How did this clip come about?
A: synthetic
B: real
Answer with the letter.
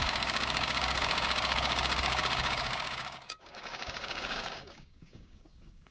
A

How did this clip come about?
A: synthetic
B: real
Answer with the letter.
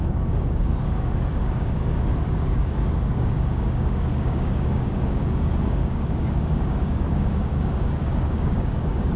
A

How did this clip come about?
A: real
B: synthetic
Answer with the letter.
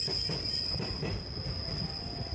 A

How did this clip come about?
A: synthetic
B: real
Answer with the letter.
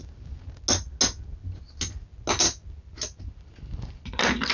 B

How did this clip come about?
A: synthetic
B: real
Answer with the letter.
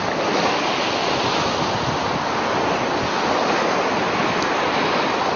B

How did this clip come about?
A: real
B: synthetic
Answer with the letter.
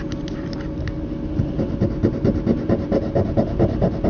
A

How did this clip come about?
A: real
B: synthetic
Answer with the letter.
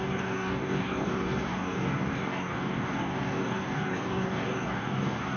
B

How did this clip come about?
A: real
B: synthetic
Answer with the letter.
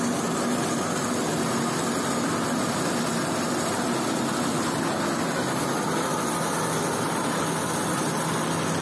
A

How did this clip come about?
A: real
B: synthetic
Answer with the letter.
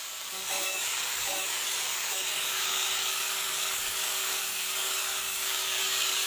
B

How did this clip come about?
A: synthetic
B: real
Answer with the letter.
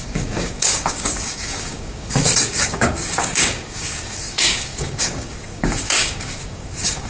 A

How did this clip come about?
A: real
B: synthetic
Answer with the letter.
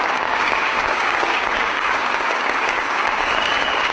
B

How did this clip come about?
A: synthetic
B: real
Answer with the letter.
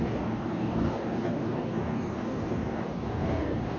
A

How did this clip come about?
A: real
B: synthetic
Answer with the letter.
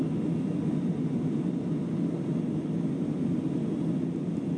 A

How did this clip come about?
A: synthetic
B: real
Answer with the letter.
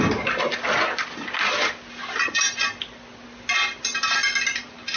B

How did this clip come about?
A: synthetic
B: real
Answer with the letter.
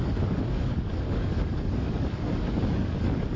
A